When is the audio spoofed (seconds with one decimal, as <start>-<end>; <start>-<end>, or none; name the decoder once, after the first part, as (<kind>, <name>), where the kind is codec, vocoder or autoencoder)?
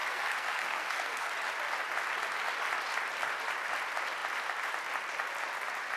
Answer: 0.0-1.3 (codec, SNAC)